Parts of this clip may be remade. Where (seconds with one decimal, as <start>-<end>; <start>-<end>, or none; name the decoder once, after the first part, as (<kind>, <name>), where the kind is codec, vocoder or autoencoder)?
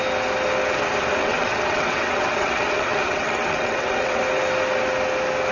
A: 1.2-4.2 (vocoder, WaveNeXt)